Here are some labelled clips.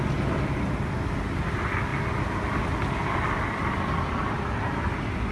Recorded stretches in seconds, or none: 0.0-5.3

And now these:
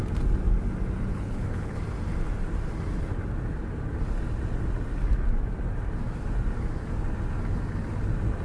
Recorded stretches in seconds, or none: 0.0-1.1; 1.8-8.4

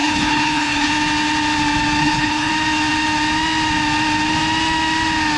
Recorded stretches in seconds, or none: 0.9-2.0; 2.5-5.4

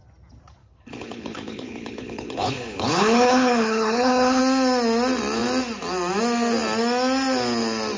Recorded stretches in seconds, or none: 0.0-0.6; 4.4-8.0

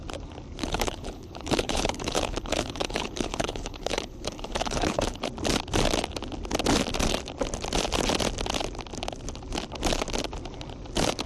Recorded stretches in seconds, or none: 0.0-0.6; 5.2-11.3